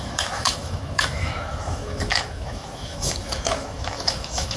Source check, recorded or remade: remade